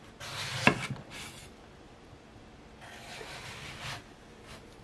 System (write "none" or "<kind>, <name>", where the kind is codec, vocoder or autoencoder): none